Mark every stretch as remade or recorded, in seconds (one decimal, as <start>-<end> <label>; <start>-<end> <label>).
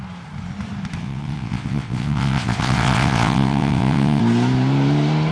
0.0-1.0 recorded; 1.0-4.2 remade; 4.2-5.3 recorded